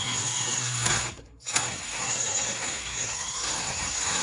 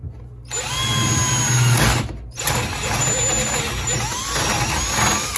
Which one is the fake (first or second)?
first